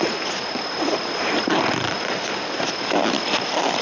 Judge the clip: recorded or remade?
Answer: recorded